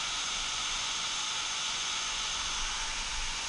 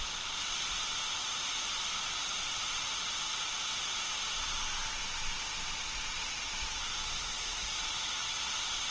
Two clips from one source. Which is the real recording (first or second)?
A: second